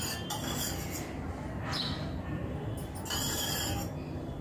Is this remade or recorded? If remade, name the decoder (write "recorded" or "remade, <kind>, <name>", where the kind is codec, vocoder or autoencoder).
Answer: recorded